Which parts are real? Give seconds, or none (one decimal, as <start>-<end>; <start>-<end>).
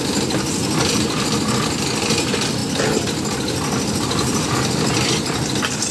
0.0-5.9